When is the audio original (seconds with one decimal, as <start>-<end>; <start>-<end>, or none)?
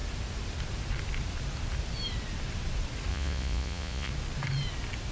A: 0.0-3.1; 4.1-5.1